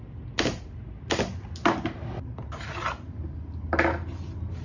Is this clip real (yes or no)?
yes